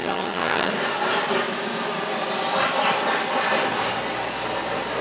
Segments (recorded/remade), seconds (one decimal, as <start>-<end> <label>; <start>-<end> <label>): 0.0-0.7 remade; 0.7-5.0 recorded

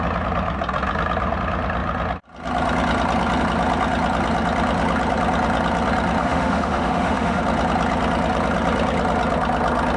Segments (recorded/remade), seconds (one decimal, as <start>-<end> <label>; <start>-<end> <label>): 0.0-6.2 recorded; 6.2-7.4 remade; 7.4-10.0 recorded

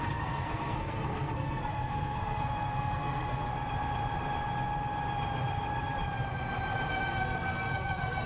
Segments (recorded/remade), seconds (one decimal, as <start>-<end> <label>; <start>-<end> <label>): 0.0-3.5 remade; 3.5-6.9 recorded; 6.9-8.3 remade

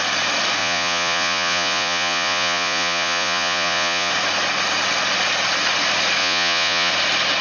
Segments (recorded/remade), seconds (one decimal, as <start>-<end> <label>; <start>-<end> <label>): 0.0-0.6 recorded; 0.6-4.1 remade; 4.1-6.2 recorded; 6.2-6.9 remade; 6.9-7.4 recorded

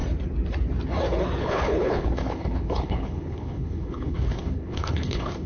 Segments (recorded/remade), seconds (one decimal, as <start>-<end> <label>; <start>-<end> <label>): 0.0-1.4 recorded; 1.4-5.5 remade

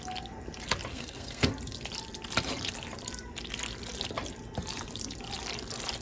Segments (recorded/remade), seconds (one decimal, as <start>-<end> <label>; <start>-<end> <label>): 0.0-0.9 recorded; 0.9-1.5 remade; 1.5-6.0 recorded

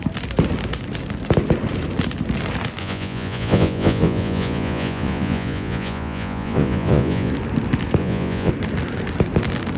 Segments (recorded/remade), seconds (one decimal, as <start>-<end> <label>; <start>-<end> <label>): 0.0-2.8 recorded; 2.8-7.3 remade; 7.3-8.0 recorded; 8.0-8.5 remade; 8.5-9.8 recorded